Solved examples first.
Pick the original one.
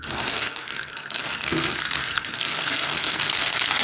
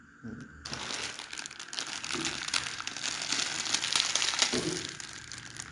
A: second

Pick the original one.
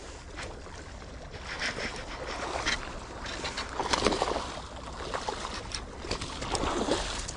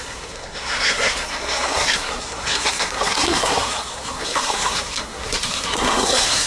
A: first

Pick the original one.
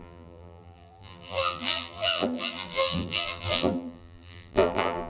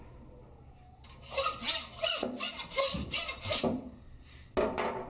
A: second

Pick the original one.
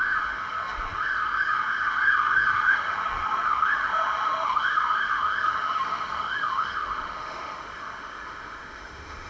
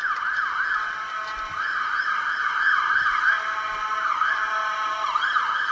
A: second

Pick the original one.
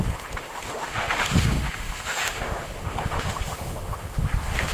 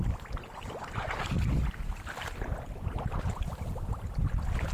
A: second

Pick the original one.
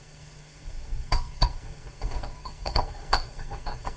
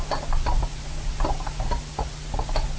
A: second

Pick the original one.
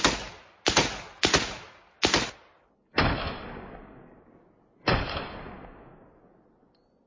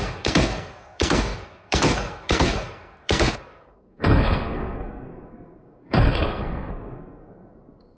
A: first